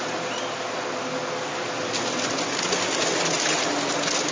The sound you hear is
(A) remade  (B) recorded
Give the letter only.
B